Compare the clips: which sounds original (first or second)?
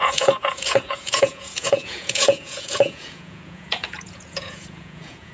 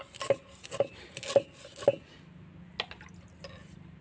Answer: second